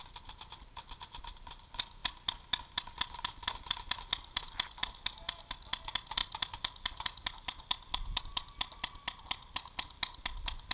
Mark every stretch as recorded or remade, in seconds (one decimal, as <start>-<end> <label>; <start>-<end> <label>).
0.0-10.7 recorded